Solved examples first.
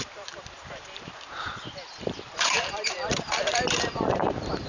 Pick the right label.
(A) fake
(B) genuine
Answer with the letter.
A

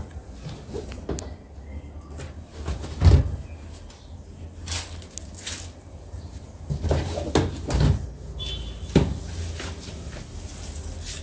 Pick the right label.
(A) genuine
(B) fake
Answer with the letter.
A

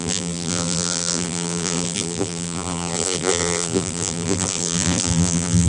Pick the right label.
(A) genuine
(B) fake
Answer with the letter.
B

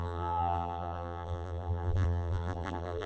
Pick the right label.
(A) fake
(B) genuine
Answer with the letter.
A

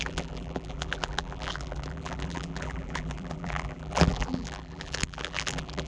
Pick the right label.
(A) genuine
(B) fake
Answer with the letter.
B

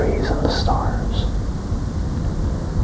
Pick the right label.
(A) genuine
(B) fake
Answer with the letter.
B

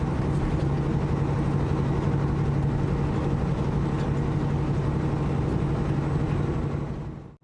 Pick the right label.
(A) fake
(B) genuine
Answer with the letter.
B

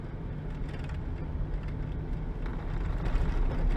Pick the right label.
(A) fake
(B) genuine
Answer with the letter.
B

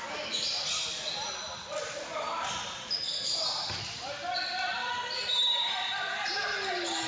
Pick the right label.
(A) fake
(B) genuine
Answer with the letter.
B